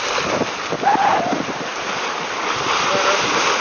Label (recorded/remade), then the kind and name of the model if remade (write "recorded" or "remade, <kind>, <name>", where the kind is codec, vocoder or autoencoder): recorded